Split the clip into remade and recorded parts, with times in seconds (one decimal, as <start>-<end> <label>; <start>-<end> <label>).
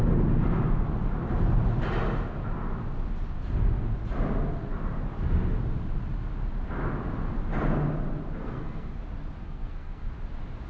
0.0-8.4 recorded; 8.4-9.0 remade; 9.0-9.4 recorded; 9.4-10.1 remade; 10.1-10.7 recorded